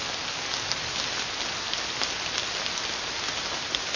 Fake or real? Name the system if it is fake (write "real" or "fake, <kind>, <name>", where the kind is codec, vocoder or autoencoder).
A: real